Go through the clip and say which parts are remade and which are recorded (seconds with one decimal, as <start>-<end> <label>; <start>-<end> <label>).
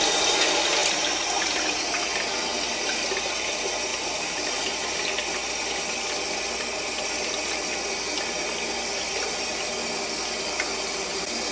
0.0-0.8 recorded; 0.8-1.8 remade; 1.8-3.9 recorded; 3.9-4.6 remade; 4.6-11.5 recorded